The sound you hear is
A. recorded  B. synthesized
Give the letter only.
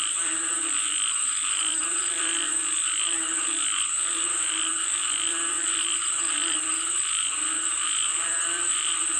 B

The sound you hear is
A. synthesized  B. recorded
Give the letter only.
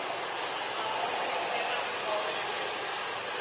B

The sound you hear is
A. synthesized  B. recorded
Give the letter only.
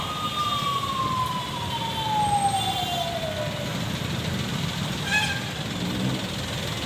B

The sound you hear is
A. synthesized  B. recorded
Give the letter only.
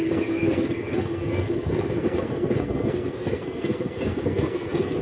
A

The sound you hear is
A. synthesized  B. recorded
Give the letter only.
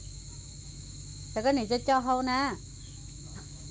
A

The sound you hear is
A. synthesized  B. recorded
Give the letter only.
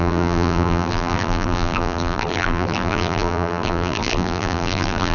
A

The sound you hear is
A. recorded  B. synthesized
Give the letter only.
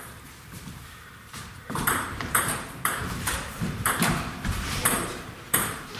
B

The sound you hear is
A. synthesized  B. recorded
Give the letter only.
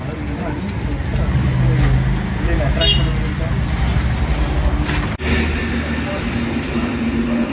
B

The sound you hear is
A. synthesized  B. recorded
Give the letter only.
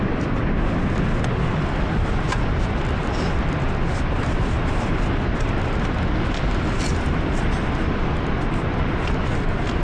B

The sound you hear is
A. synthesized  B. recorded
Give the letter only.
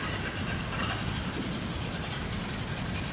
B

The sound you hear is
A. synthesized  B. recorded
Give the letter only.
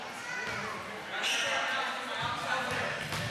B